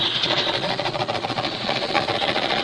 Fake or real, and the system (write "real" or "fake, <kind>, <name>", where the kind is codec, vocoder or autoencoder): fake, vocoder, Vocos